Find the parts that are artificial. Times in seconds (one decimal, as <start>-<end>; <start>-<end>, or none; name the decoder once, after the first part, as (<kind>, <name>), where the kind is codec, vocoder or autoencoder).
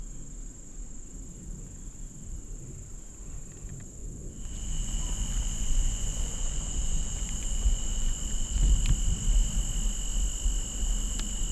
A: 4.0-8.6 (vocoder, Vocos)